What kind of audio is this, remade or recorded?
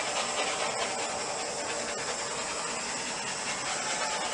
recorded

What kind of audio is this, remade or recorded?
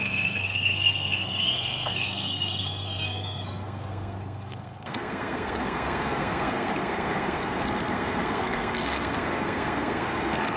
remade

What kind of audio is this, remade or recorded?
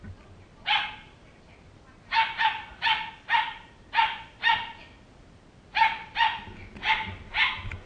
recorded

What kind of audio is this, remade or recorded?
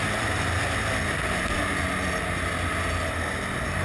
recorded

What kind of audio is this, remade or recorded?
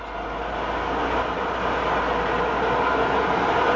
recorded